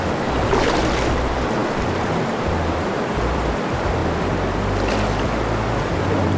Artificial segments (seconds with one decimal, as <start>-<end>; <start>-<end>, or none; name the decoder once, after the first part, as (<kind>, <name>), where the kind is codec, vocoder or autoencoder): 0.0-4.0 (vocoder, BigVGAN v2); 5.8-6.4

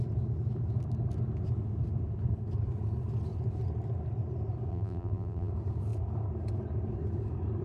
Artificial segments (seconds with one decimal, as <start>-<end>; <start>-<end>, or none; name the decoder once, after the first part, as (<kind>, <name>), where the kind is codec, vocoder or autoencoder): 4.7-5.5 (vocoder, BigVGAN v2)

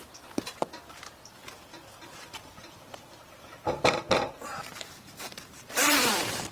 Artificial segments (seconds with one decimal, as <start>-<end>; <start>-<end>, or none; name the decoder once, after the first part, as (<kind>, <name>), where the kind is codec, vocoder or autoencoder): 1.4-4.5 (vocoder, BigVGAN v2); 5.3-6.5

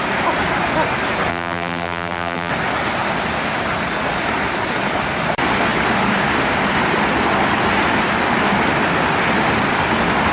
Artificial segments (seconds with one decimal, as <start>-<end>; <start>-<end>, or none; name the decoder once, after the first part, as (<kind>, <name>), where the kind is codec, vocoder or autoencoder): 1.3-2.5 (vocoder, BigVGAN v2)

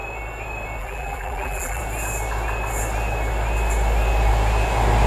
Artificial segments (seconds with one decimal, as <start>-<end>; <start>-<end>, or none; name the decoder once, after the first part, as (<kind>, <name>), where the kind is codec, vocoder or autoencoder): 0.8-1.8 (vocoder, BigVGAN v2)

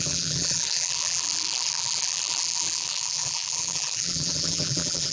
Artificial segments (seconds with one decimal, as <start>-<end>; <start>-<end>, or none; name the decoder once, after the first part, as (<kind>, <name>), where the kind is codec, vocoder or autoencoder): 0.0-5.1 (vocoder, BigVGAN v2)

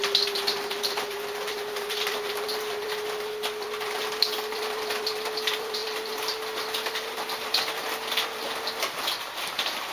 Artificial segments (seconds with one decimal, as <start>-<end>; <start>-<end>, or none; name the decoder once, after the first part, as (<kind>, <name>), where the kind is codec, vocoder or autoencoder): 0.0-9.9 (vocoder, BigVGAN v2)

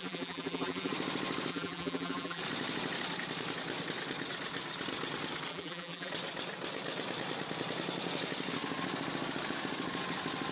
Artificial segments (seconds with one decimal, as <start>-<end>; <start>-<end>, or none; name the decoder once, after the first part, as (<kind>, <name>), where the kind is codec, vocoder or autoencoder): 0.0-0.9 (vocoder, BigVGAN v2); 1.5-2.4; 5.5-6.1